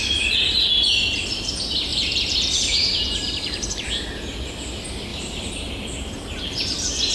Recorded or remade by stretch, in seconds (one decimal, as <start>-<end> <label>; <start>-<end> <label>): 0.0-1.9 recorded; 1.9-4.0 remade; 4.0-5.1 recorded; 5.1-5.7 remade; 5.7-7.1 recorded